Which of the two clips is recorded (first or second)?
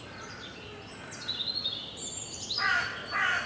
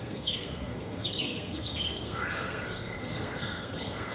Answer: first